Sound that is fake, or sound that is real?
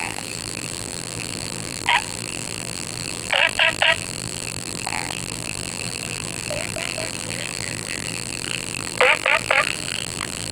fake